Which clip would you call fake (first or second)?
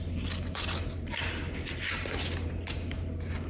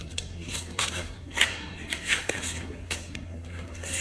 second